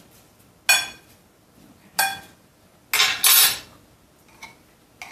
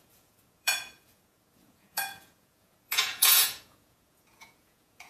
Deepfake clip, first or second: second